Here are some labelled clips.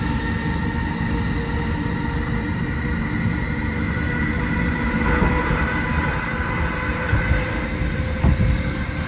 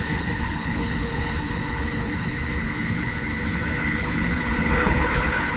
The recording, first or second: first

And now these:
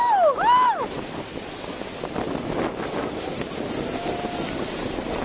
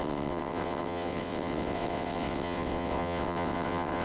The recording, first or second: first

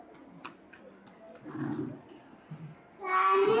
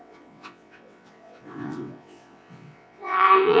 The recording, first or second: first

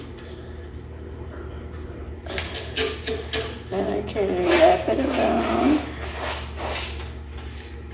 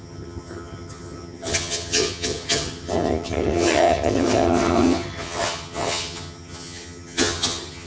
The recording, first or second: first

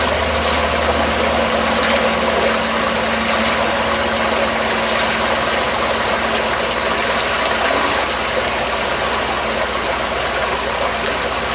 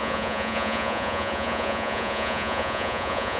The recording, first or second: first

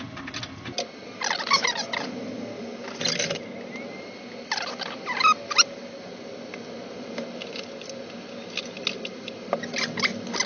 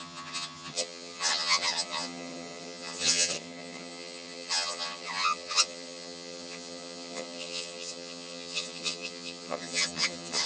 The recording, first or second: first